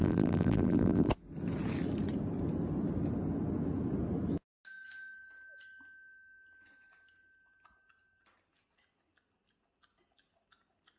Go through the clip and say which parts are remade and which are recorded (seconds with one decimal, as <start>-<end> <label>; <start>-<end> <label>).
0.0-1.1 remade; 1.1-11.0 recorded